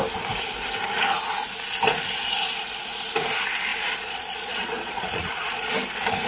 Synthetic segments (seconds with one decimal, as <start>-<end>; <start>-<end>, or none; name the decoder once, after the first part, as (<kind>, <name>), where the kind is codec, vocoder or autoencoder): 3.7-5.7 (vocoder, Vocos)